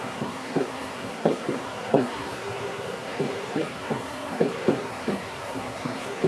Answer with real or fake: fake